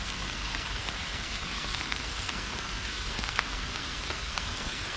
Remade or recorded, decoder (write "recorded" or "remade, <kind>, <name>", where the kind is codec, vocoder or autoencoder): remade, codec, SNAC